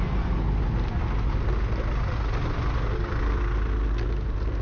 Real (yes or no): yes